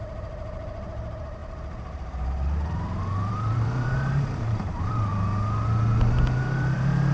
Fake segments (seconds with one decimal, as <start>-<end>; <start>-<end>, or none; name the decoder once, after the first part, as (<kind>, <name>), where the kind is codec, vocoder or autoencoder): 0.0-1.4 (vocoder, BigVGAN v2); 3.3-5.1; 6.4-7.1